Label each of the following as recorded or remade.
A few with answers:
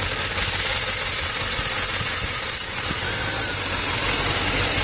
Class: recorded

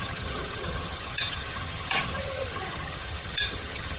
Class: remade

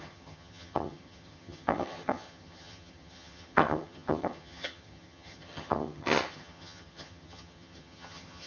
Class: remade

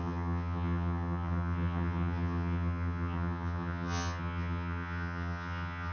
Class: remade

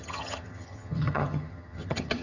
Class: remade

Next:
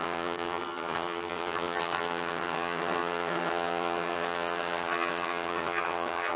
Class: remade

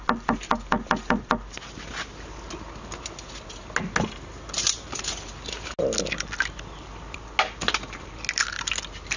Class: recorded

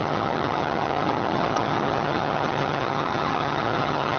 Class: remade